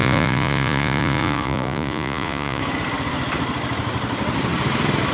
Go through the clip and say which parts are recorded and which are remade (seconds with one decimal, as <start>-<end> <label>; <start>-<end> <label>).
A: 0.0-2.6 remade; 2.6-5.1 recorded

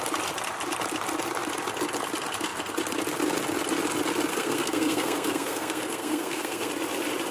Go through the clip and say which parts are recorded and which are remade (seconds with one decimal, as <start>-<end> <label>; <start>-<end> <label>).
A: 0.0-4.3 recorded; 4.3-6.7 remade; 6.7-7.3 recorded

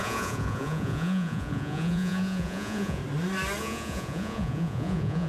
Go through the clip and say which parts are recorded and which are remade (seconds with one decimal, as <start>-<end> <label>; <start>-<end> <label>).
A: 0.0-3.0 remade; 3.0-3.6 recorded; 3.6-5.3 remade

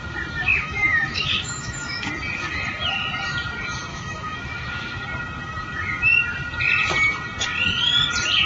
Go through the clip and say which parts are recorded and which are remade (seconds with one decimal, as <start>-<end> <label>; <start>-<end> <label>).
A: 0.0-0.5 recorded; 0.5-2.1 remade; 2.1-3.9 recorded; 3.9-5.0 remade; 5.0-8.5 recorded

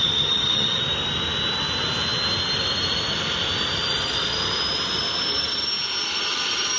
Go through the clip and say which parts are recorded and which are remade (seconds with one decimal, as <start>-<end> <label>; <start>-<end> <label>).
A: 0.0-0.8 remade; 0.8-6.8 recorded